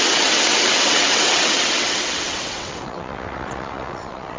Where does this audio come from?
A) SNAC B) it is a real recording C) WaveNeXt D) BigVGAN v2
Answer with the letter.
C